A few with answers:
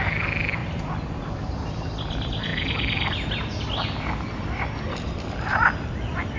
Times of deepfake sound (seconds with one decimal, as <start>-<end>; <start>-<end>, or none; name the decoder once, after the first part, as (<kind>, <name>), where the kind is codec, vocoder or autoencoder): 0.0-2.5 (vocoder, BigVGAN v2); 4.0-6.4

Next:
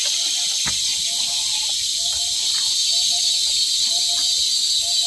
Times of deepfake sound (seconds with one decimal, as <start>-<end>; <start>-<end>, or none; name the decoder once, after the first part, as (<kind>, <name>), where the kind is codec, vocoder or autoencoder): none

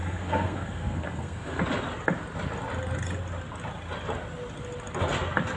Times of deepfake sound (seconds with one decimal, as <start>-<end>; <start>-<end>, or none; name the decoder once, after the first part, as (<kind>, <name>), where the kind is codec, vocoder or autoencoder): 0.0-1.6 (codec, SNAC)

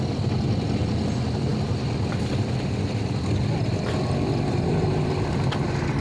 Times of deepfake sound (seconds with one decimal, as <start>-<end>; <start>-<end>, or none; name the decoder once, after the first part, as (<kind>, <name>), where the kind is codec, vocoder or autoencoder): none

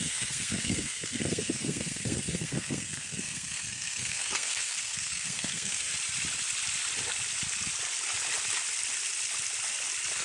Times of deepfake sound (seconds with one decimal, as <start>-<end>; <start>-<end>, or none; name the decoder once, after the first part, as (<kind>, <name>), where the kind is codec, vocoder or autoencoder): 0.0-5.9 (codec, SNAC)